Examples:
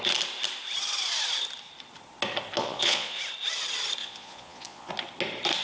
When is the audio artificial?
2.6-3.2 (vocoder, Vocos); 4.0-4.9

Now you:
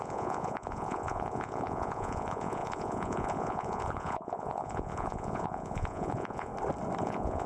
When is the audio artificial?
0.0-6.5 (vocoder, Vocos); 7.0-7.5

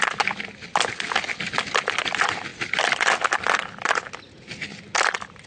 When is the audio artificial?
none